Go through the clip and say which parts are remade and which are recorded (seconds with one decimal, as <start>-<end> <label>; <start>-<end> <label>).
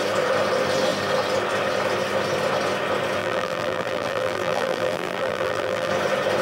0.0-3.2 recorded; 3.2-5.9 remade; 5.9-6.4 recorded